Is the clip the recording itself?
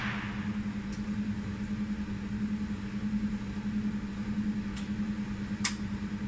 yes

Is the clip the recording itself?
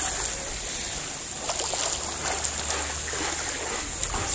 yes